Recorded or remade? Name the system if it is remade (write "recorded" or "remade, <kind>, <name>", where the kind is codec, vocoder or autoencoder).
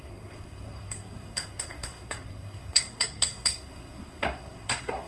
remade, codec, SNAC